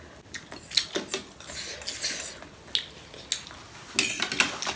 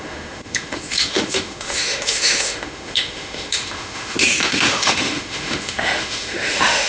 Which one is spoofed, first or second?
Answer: second